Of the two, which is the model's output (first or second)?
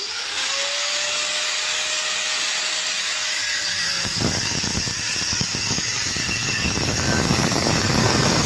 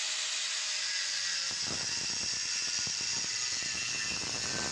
first